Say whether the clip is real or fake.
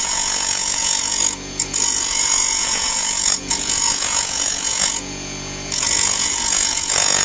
fake